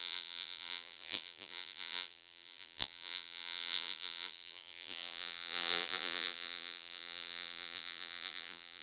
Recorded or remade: remade